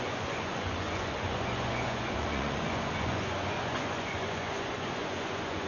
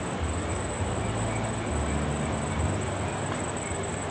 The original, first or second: second